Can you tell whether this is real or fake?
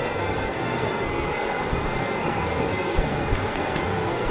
fake